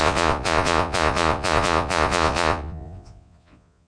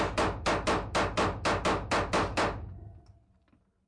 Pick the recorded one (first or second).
second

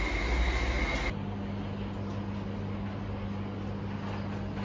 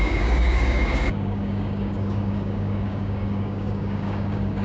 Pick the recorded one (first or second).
first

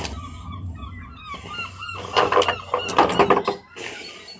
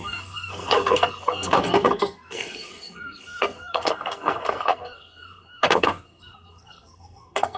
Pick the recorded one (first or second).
first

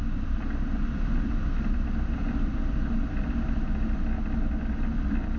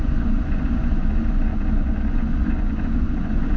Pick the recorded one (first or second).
first